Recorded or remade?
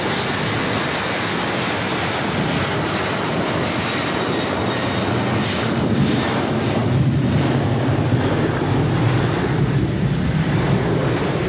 recorded